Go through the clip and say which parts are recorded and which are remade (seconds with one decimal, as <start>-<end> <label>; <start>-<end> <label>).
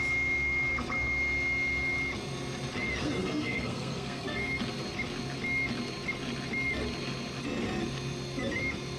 0.0-3.0 recorded; 3.0-4.6 remade; 4.6-9.0 recorded